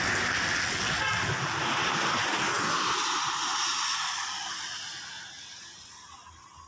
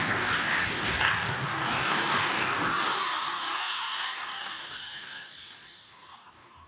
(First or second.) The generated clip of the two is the second